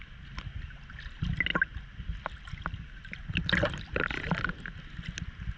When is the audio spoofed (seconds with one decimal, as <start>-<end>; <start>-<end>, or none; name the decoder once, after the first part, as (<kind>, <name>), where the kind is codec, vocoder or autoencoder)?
none